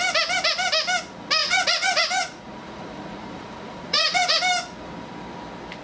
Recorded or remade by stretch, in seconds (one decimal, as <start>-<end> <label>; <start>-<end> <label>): 0.0-1.4 recorded; 1.4-4.4 remade; 4.4-5.8 recorded

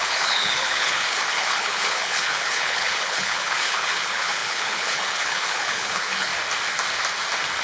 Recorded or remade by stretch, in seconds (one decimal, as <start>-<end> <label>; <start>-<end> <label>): 0.0-6.3 remade; 6.3-7.6 recorded

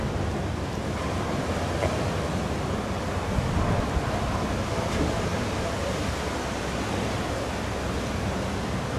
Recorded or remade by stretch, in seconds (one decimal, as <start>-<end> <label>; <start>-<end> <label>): 0.0-9.0 recorded

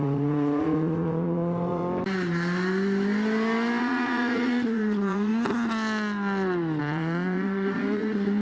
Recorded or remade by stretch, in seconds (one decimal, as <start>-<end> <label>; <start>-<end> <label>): 0.0-1.8 remade; 1.8-3.8 recorded; 3.8-5.3 remade; 5.3-6.8 recorded; 6.8-8.4 remade